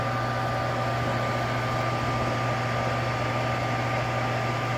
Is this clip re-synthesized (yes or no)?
no